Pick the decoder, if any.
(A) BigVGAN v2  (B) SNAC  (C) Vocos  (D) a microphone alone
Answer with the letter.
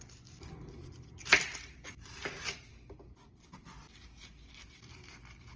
A